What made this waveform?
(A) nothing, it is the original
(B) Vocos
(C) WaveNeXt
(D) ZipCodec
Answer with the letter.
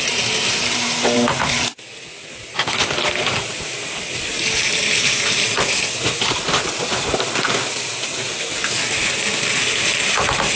A